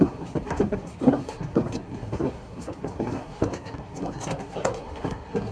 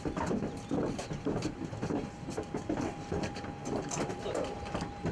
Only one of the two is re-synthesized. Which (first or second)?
first